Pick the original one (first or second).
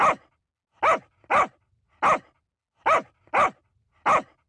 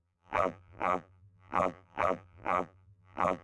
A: first